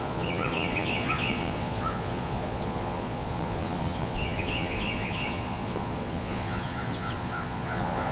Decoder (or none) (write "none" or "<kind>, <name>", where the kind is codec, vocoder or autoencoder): vocoder, Vocos